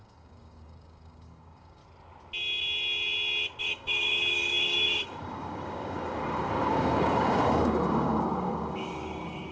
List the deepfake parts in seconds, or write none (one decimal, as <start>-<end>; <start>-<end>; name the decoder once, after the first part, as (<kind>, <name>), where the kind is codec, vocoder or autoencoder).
0.0-1.8 (codec, DAC); 3.6-9.5